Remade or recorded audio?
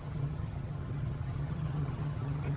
remade